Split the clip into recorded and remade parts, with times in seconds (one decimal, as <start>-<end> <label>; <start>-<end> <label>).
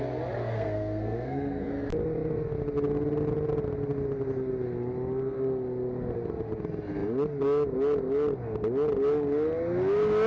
0.0-0.4 recorded; 0.4-1.7 remade; 1.7-10.3 recorded